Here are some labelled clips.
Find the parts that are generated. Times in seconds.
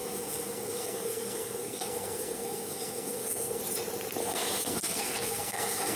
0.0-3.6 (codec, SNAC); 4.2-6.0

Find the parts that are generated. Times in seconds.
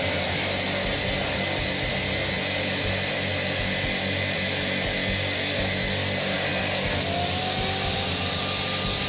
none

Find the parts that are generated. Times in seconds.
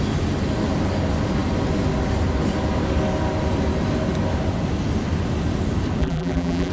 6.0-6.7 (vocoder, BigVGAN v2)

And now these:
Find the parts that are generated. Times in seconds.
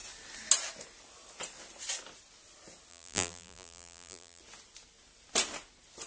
2.9-4.4 (vocoder, BigVGAN v2)